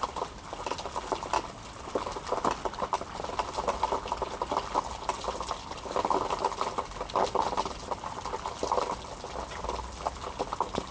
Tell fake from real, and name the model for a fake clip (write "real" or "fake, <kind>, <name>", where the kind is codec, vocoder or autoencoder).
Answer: real